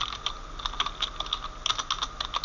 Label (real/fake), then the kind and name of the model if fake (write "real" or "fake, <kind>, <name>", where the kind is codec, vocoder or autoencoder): real